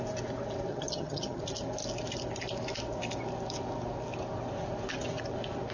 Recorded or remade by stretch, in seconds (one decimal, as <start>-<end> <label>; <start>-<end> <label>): 0.0-0.7 recorded; 0.7-1.4 remade; 1.4-5.7 recorded